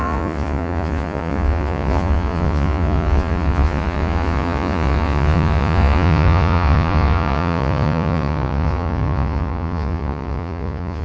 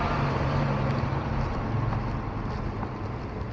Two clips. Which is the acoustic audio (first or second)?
second